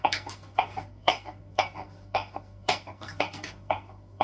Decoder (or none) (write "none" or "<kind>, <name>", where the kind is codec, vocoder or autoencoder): codec, SNAC